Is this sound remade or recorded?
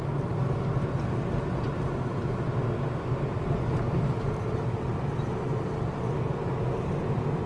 recorded